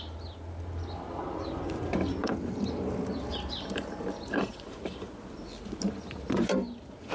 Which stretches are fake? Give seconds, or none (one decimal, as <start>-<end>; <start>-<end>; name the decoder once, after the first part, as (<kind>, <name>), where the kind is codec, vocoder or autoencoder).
2.2-4.8 (vocoder, BigVGAN v2)